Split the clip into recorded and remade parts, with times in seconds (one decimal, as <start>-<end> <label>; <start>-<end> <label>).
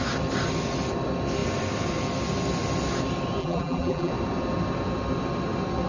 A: 0.0-3.4 recorded; 3.4-4.1 remade; 4.1-5.9 recorded